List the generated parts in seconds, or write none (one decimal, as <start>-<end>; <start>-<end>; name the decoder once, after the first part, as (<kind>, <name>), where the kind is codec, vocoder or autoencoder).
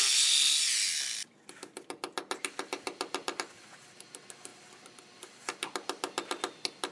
none